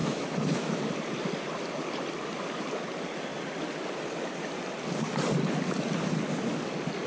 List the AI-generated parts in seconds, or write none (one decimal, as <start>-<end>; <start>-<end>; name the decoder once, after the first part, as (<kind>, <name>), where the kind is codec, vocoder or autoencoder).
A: 0.0-0.8 (autoencoder, DAC-VAE)